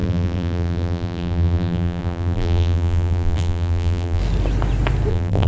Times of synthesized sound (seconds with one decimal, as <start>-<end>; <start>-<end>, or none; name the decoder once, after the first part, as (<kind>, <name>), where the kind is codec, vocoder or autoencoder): 0.0-4.2 (vocoder, BigVGAN v2); 5.1-5.5